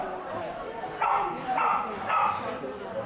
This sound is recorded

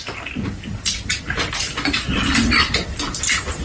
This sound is recorded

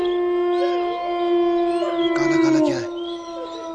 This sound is recorded